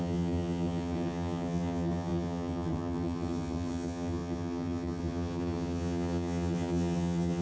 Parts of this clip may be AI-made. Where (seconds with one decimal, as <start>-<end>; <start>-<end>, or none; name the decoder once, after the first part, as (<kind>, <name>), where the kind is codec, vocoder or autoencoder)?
0.0-7.4 (vocoder, HiFi-GAN)